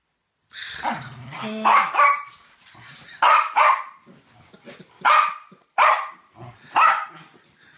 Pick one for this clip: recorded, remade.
recorded